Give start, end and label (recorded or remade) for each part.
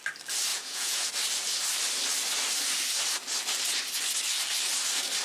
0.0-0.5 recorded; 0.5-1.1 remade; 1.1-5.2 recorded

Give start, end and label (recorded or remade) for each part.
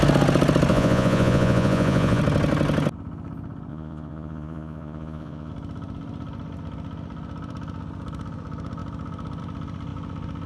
0.0-0.7 recorded; 0.7-2.2 remade; 2.2-3.7 recorded; 3.7-5.5 remade; 5.5-10.5 recorded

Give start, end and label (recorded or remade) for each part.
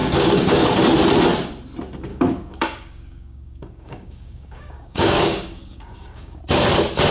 0.0-0.8 remade; 0.8-2.1 recorded; 2.1-6.4 remade; 6.4-7.1 recorded